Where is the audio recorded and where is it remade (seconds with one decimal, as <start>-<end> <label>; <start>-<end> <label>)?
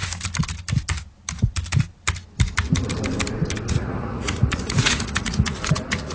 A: 0.0-3.7 recorded; 3.7-6.1 remade